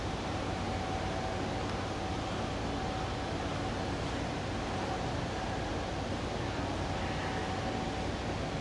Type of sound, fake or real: real